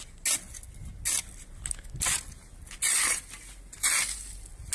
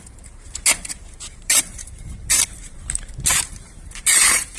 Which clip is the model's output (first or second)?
second